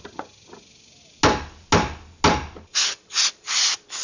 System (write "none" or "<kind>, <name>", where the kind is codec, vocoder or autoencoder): none